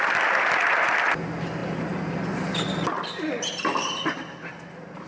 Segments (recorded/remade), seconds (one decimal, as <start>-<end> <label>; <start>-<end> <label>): 0.0-5.1 recorded